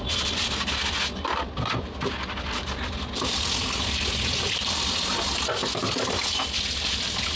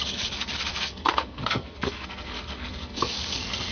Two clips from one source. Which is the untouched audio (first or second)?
first